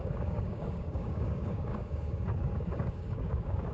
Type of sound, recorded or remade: remade